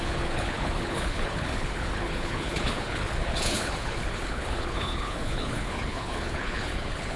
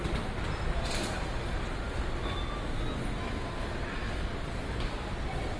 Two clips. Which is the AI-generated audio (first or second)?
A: first